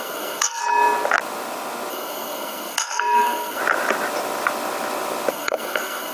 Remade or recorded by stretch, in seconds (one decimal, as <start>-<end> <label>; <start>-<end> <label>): 0.0-0.6 remade; 0.6-1.9 recorded; 1.9-3.6 remade; 3.6-5.3 recorded; 5.3-6.1 remade